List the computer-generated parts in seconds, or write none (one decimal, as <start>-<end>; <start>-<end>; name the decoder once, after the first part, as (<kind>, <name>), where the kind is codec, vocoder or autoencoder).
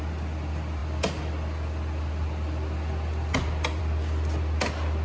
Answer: none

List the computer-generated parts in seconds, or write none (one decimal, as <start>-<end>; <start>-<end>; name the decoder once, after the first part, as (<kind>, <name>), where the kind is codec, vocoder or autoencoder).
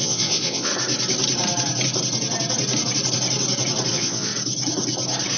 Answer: 0.0-0.7 (vocoder, Vocos); 3.9-4.3